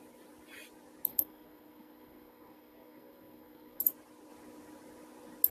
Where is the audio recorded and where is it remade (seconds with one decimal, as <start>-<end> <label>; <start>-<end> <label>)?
0.0-1.1 recorded; 1.1-3.8 remade; 3.8-5.5 recorded